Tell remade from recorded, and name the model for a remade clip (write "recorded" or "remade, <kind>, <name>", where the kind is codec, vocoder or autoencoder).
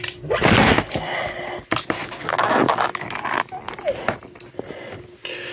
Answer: recorded